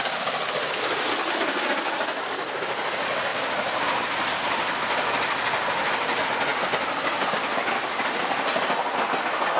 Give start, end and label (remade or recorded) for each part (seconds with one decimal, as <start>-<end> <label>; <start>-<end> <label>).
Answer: 0.0-9.6 recorded